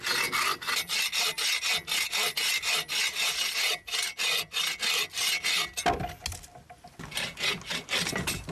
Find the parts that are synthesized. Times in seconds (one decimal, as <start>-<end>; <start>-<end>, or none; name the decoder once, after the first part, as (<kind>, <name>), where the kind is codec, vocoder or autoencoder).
none